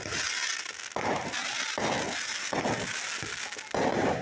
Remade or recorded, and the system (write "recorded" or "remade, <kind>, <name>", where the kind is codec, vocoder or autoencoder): recorded